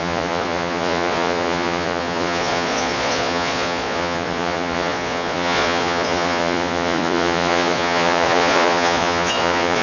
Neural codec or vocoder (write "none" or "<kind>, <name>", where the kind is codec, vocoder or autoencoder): vocoder, Vocos